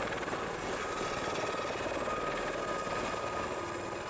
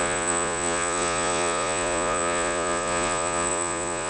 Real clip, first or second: first